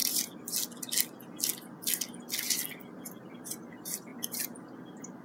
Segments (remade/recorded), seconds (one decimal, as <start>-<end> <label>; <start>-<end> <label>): 0.0-3.1 recorded; 3.1-4.1 remade; 4.1-4.8 recorded; 4.8-5.2 remade